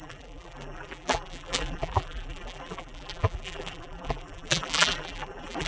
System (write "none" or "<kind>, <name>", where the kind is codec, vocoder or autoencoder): vocoder, BigVGAN v2